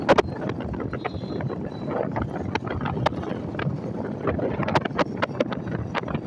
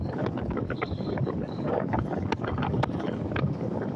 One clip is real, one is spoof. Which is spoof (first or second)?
second